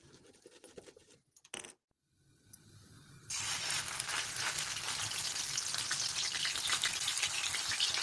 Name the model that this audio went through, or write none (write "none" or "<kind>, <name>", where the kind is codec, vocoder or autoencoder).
none